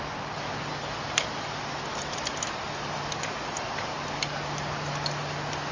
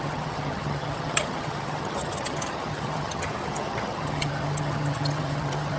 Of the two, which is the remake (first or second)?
second